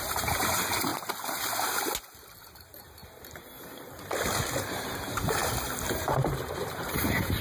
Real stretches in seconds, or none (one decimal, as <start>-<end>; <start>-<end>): 0.9-2.4; 3.0-4.5; 5.4-6.0